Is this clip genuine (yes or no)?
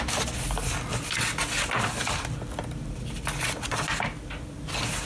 yes